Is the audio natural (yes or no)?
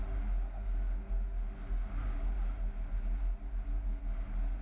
yes